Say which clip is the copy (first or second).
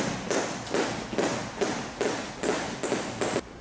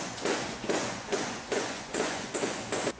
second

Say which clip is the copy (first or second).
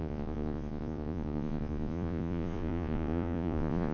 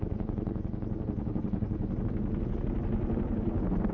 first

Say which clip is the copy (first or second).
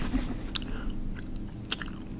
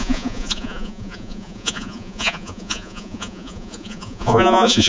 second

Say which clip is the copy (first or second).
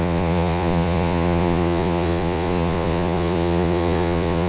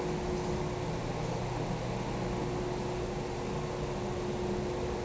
first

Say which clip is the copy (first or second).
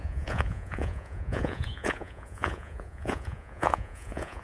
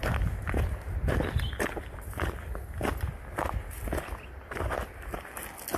first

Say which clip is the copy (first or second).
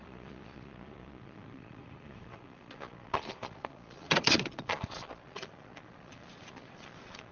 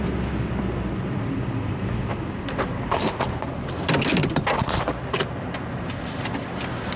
first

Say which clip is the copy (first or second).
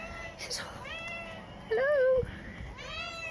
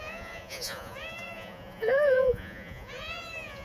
second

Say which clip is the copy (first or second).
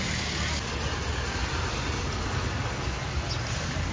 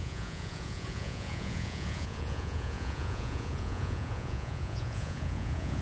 second